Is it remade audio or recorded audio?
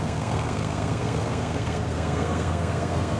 remade